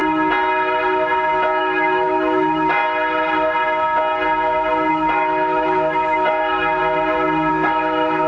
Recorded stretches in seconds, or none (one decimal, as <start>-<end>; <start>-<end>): 0.0-1.6; 2.8-4.9; 6.8-7.5